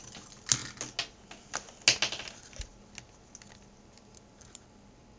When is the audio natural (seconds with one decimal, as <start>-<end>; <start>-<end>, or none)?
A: 0.0-5.2